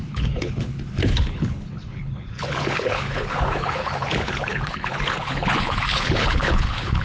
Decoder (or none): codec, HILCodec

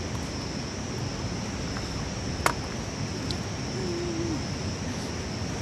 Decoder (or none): none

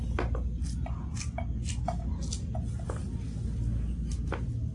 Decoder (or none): none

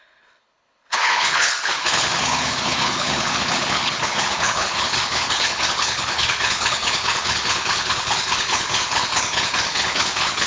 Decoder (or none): codec, HILCodec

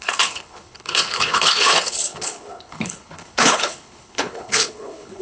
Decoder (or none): codec, HILCodec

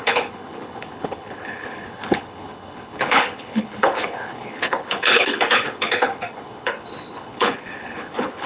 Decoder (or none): codec, HILCodec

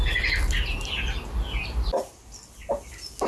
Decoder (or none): none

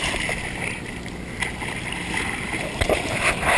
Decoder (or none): none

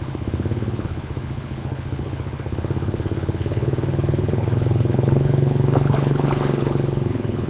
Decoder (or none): codec, HILCodec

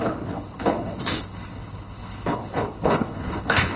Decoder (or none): codec, HILCodec